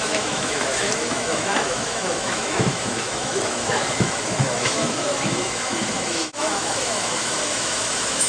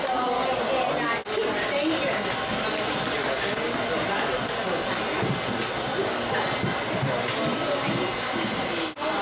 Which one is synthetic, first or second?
first